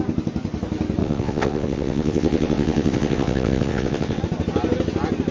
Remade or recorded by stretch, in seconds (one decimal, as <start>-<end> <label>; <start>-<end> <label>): 0.0-1.0 recorded; 1.0-4.2 remade; 4.2-5.3 recorded